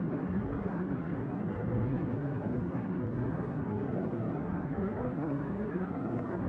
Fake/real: fake